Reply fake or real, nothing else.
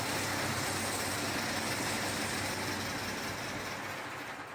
real